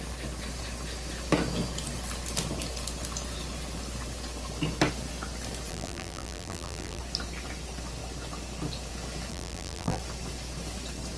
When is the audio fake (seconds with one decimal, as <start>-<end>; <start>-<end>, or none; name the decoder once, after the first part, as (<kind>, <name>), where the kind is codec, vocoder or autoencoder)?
5.7-7.0 (vocoder, BigVGAN v2); 9.3-10.0